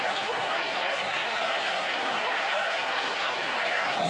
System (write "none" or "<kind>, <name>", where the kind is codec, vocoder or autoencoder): codec, SNAC